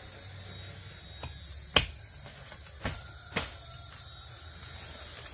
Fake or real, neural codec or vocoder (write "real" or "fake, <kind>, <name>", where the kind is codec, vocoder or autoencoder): real